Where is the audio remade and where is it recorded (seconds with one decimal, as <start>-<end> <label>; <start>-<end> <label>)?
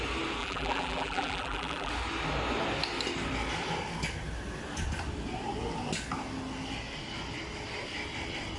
0.0-0.4 recorded; 0.4-1.9 remade; 1.9-8.6 recorded